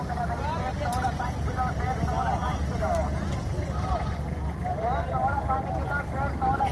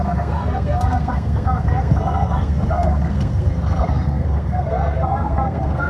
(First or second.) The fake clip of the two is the second